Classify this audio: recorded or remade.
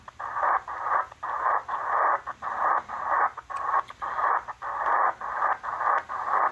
recorded